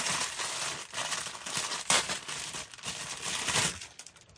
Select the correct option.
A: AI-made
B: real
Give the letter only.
B